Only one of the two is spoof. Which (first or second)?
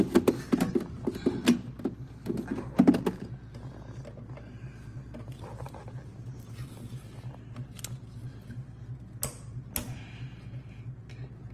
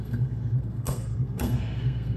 second